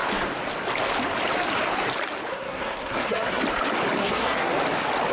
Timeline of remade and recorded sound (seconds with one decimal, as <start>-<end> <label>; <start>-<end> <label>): 0.0-2.3 recorded; 2.3-3.4 remade; 3.4-4.0 recorded; 4.0-4.5 remade; 4.5-5.1 recorded